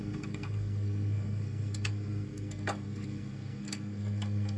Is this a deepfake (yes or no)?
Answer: yes